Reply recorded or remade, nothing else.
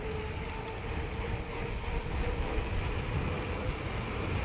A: recorded